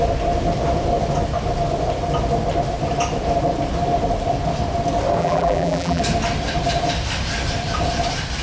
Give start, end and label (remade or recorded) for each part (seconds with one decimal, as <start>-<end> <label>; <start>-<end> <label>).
0.0-5.2 recorded; 5.2-6.0 remade; 6.0-8.4 recorded